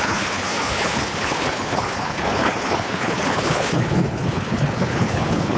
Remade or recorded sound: remade